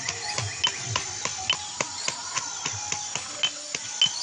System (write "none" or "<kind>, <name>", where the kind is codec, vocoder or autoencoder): none